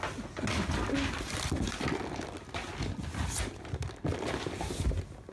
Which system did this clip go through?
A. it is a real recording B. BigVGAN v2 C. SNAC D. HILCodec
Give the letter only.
A